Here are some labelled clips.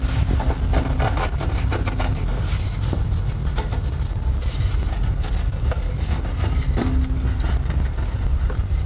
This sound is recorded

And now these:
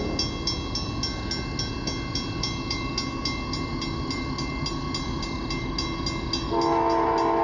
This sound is recorded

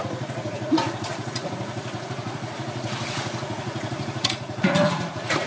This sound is remade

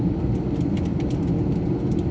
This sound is recorded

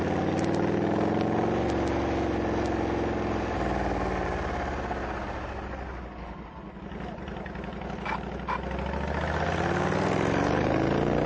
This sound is recorded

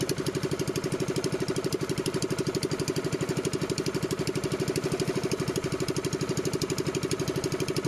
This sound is recorded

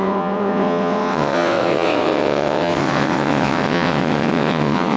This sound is remade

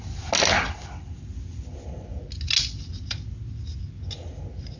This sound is recorded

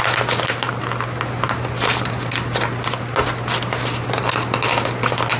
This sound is recorded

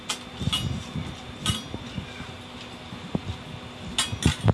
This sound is recorded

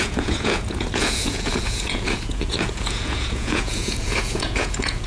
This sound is remade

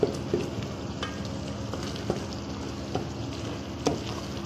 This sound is recorded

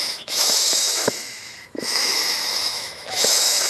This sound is remade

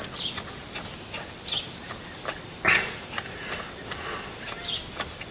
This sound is recorded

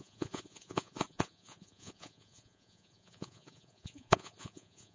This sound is remade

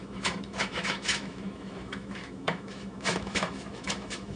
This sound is remade